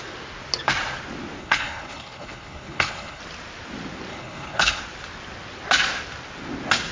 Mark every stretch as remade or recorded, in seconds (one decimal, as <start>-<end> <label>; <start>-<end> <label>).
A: 0.0-1.4 recorded; 1.4-3.2 remade; 3.2-4.1 recorded; 4.1-4.8 remade; 4.8-6.9 recorded